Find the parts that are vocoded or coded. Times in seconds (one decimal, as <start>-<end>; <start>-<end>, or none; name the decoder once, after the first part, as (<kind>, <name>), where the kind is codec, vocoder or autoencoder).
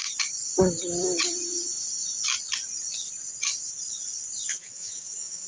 4.5-5.5 (vocoder, Vocos)